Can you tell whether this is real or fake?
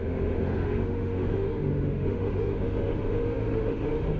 fake